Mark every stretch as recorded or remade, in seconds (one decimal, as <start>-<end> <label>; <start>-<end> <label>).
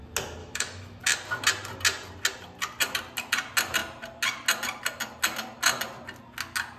0.0-0.4 recorded; 0.4-1.0 remade; 1.0-6.8 recorded